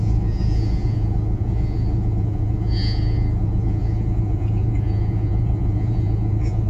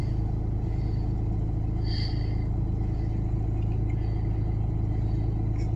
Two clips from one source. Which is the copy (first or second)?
first